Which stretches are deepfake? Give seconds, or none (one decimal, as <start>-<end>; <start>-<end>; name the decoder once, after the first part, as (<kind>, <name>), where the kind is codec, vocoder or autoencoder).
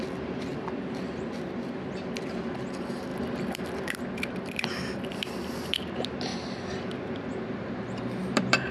0.0-3.1 (vocoder, BigVGAN v2); 3.9-6.3; 7.0-8.7